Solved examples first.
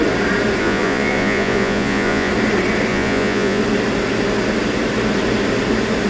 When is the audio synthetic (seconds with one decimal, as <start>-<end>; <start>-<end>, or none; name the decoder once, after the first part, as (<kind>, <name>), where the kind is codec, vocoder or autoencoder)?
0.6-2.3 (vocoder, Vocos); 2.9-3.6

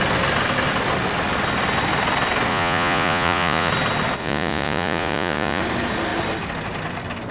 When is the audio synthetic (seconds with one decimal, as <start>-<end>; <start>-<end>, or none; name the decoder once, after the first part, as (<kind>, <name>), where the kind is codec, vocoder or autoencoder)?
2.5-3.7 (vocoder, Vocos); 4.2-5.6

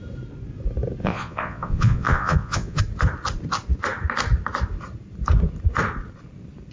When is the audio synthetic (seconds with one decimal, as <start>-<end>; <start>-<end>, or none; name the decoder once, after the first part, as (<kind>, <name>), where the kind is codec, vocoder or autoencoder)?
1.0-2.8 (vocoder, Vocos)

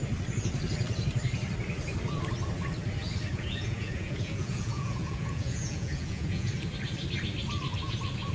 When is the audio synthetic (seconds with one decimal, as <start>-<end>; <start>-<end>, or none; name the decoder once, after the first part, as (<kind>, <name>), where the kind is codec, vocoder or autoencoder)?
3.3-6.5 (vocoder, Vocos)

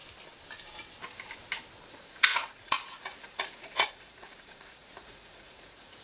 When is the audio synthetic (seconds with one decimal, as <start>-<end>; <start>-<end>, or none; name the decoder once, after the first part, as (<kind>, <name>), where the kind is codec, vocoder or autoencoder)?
1.9-6.0 (vocoder, Vocos)

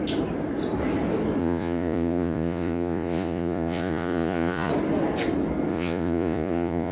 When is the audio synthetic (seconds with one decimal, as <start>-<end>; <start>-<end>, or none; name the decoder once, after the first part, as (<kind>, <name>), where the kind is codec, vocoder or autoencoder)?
1.4-4.7 (vocoder, Vocos); 5.7-6.9

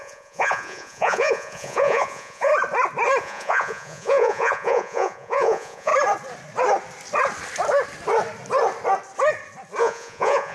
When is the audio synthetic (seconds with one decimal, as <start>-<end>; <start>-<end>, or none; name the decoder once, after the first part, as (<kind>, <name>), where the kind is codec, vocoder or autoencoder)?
0.0-2.5 (vocoder, Vocos); 3.2-5.9; 9.8-10.5

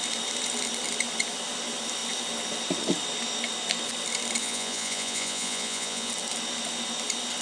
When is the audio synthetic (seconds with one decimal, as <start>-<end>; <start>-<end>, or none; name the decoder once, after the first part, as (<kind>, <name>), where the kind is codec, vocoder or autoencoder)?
4.4-6.1 (vocoder, Vocos)